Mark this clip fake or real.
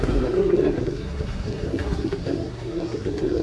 fake